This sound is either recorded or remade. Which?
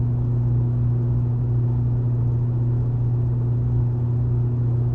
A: recorded